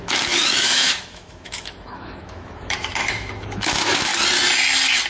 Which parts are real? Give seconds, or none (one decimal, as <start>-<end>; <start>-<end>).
4.1-5.1